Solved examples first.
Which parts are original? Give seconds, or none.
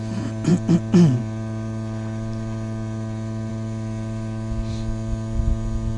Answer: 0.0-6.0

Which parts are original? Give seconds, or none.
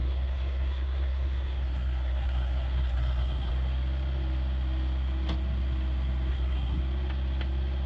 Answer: 3.5-6.3; 6.8-7.9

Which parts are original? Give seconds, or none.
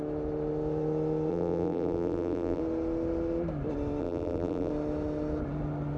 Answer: 0.0-1.3; 2.6-4.0; 4.7-6.0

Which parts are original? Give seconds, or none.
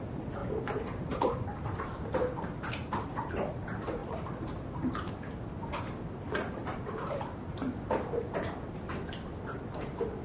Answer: 0.0-4.0; 5.1-6.7; 7.3-10.2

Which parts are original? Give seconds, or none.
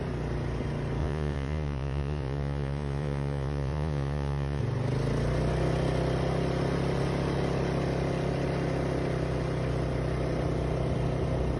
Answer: 0.0-1.0; 4.6-11.6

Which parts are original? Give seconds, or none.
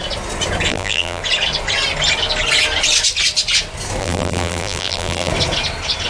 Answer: 0.0-0.7; 1.2-4.0; 5.3-6.1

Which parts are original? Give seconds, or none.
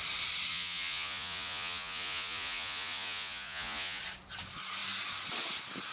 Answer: 0.0-0.5; 4.0-5.9